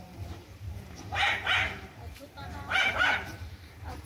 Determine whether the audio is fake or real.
fake